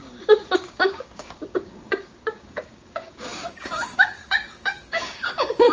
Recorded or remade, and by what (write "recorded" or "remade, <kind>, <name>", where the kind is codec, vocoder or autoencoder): remade, codec, DAC